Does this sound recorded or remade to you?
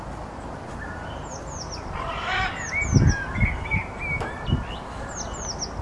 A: recorded